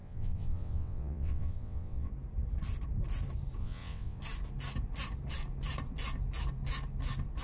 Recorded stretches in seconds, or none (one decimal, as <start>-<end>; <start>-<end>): 2.1-3.6; 4.2-7.4